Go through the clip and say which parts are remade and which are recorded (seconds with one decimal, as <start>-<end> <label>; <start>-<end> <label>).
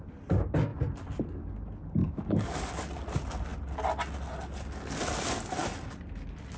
0.0-2.0 recorded; 2.0-2.7 remade; 2.7-6.6 recorded